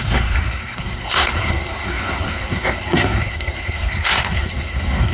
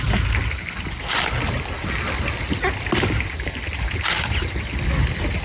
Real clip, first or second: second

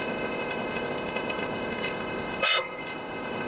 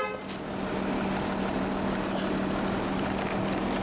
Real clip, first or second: second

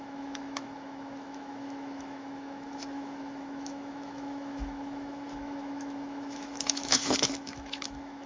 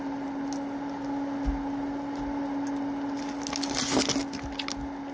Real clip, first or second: second